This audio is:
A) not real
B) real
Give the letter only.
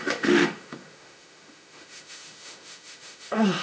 A